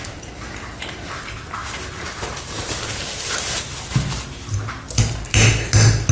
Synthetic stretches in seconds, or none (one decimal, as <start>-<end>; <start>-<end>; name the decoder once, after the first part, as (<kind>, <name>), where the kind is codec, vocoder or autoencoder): 1.6-5.0 (vocoder, BigVGAN v2)